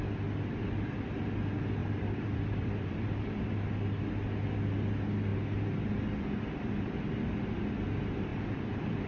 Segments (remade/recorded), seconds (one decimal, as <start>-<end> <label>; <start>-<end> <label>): 0.0-1.8 recorded; 1.8-3.4 remade; 3.4-8.3 recorded; 8.3-9.1 remade